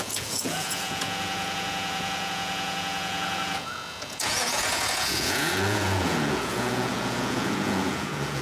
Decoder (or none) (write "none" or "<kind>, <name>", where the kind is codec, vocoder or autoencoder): vocoder, Vocos